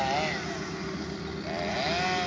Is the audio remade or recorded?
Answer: recorded